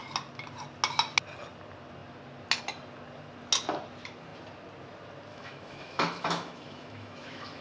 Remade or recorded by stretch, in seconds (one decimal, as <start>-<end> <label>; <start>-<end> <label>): 0.0-5.3 recorded; 5.3-7.6 remade